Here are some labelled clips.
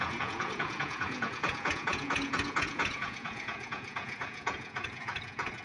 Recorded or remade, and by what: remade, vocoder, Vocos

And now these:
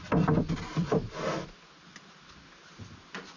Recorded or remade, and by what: recorded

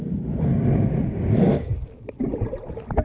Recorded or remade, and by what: recorded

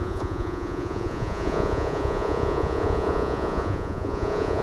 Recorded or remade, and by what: remade, vocoder, Vocos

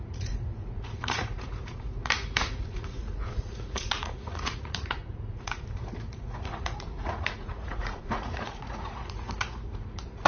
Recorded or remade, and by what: remade, vocoder, Vocos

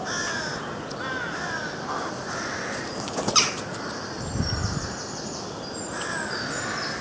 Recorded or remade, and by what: recorded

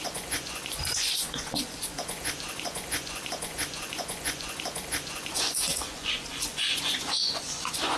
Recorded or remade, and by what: remade, vocoder, Vocos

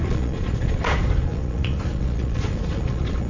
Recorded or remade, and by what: remade, vocoder, Vocos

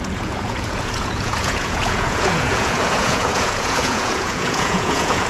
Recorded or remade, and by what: remade, vocoder, Vocos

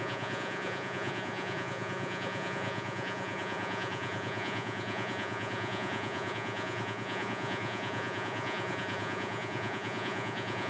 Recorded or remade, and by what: remade, vocoder, Vocos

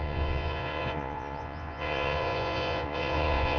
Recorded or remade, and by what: remade, vocoder, Vocos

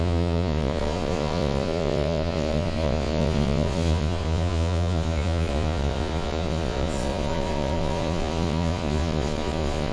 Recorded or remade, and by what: remade, vocoder, Vocos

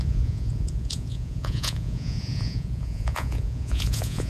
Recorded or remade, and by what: remade, vocoder, Vocos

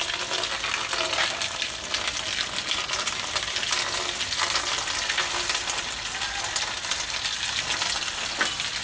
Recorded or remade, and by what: recorded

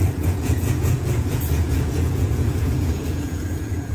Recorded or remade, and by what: remade, vocoder, Vocos